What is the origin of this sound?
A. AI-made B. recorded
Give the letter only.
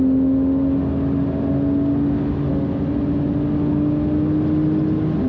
B